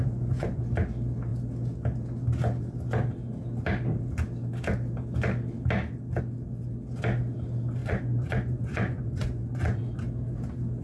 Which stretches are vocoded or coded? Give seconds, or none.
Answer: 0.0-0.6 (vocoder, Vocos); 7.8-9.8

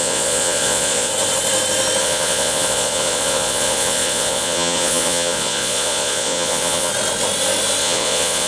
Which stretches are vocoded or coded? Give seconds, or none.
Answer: 0.0-1.1 (vocoder, Vocos); 2.0-6.9; 7.8-8.5

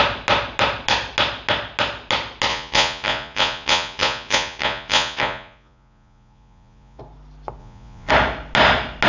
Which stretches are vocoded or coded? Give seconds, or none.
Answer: 2.5-7.0 (vocoder, Vocos); 7.6-8.1